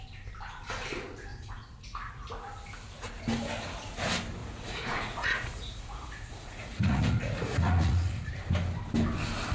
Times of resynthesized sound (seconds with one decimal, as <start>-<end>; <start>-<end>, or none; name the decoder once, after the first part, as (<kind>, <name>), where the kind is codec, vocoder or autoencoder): 1.3-2.3 (vocoder, Vocos); 4.4-8.3